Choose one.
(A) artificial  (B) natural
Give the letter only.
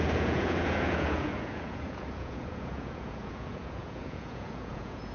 A